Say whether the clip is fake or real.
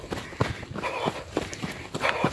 real